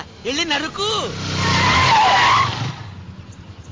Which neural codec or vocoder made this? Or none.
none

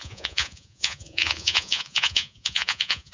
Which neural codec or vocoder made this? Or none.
vocoder, Vocos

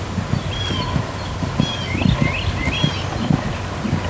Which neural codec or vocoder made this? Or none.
none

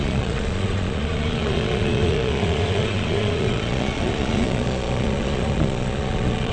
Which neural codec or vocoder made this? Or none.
vocoder, Vocos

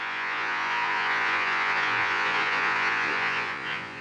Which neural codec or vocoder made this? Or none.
vocoder, Vocos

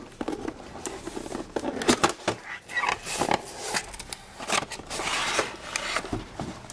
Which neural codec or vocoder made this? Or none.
none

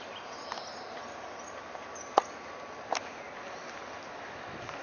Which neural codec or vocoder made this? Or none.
none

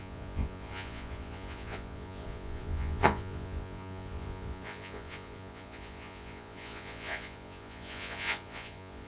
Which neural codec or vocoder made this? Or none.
vocoder, Vocos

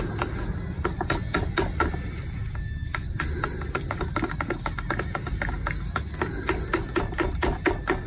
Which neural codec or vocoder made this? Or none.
none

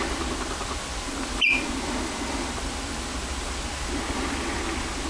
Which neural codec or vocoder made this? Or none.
none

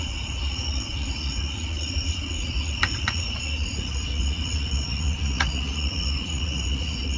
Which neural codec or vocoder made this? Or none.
vocoder, Vocos